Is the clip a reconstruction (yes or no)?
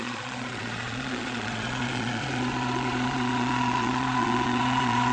yes